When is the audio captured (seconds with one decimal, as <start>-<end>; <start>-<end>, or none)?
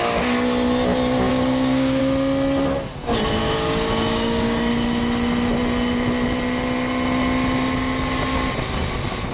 0.0-1.3; 2.0-3.4; 4.7-9.3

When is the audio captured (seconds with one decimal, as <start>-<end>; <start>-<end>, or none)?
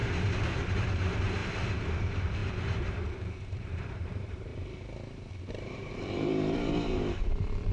0.0-0.6; 1.4-2.0; 4.5-5.5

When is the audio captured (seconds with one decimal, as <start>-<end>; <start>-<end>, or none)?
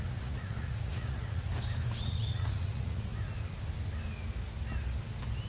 1.5-2.0; 3.1-5.5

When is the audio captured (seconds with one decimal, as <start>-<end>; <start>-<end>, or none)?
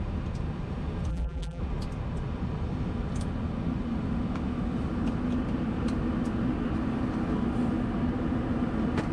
0.0-1.1; 1.6-9.1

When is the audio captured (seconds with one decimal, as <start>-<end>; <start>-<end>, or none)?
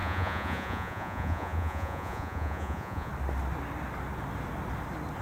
3.1-5.2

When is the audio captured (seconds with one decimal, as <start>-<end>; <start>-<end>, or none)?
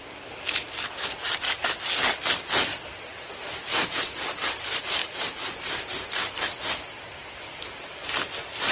0.0-2.7; 4.5-5.0; 6.1-8.7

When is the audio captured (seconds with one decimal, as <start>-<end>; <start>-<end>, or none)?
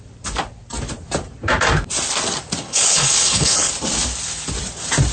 0.0-2.6; 3.7-5.1